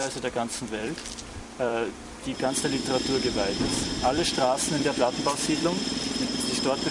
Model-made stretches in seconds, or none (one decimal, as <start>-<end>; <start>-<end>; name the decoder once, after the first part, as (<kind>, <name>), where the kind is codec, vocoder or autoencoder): 0.0-2.6 (vocoder, BigVGAN v2); 3.7-6.2